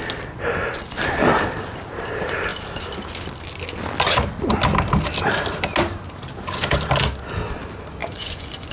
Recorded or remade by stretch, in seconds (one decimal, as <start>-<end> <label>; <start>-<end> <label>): 0.0-8.0 recorded; 8.0-8.7 remade